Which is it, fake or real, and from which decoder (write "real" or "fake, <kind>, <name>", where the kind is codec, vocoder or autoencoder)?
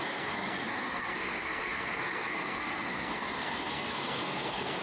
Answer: fake, codec, SNAC